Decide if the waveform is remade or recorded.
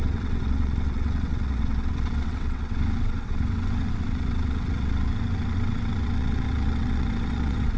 remade